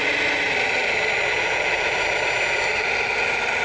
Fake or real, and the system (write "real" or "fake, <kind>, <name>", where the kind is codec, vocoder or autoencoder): real